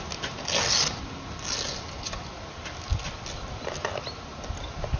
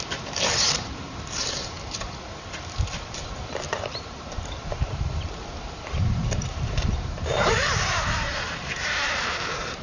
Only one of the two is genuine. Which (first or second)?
first